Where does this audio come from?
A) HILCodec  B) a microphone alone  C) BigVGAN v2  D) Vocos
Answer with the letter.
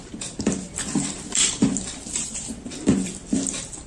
C